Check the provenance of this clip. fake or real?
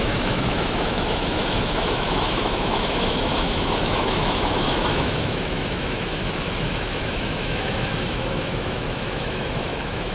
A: fake